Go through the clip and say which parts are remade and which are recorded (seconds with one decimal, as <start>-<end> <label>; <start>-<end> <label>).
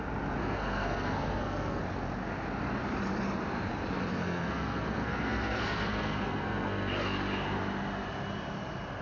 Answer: 0.0-0.4 recorded; 0.4-1.8 remade; 1.8-4.1 recorded; 4.1-6.9 remade; 6.9-9.0 recorded